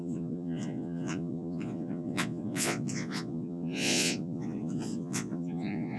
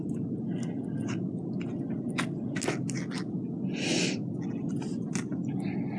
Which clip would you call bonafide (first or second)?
second